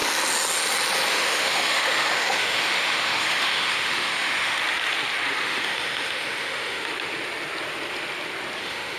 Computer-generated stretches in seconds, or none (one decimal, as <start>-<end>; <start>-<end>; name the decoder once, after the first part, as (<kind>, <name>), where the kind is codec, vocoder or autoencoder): 1.1-4.6 (autoencoder, DAC-VAE); 5.4-6.9; 8.6-9.0